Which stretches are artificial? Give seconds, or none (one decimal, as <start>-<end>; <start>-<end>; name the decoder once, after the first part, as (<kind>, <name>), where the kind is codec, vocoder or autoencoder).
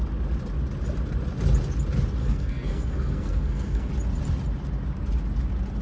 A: 2.2-3.9 (codec, SNAC)